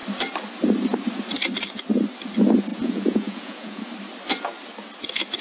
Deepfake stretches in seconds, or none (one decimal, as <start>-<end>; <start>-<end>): 2.7-3.8